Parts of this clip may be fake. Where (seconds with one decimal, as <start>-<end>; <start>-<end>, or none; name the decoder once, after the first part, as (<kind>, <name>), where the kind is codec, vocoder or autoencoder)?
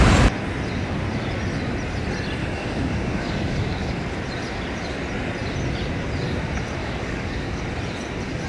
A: 2.4-4.1 (codec, DAC); 6.8-7.6